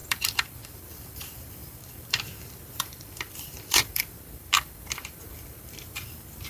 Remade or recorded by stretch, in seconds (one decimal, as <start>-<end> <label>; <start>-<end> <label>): 0.0-6.5 remade